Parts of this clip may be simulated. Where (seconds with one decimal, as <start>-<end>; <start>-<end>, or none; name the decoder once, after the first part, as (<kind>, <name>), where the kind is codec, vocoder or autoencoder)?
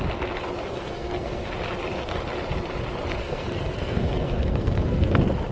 0.7-1.5 (codec, SNAC); 3.2-5.1